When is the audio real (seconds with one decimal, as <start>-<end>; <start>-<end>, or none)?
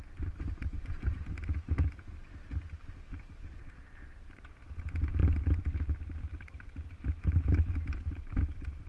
0.0-8.9